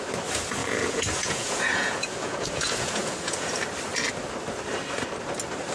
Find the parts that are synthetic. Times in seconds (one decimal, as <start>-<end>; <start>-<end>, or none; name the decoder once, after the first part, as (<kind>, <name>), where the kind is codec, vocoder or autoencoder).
0.6-3.5 (vocoder, Vocos)